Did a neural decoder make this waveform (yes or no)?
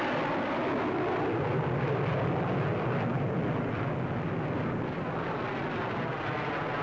no